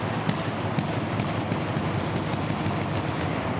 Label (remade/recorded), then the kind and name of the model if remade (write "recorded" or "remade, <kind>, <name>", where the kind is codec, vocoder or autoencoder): recorded